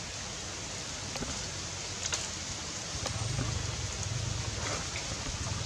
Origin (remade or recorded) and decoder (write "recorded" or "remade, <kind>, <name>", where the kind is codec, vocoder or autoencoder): recorded